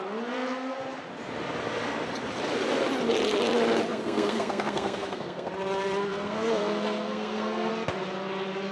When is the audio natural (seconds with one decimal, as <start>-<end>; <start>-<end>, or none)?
0.0-3.9; 5.5-6.1; 7.7-8.7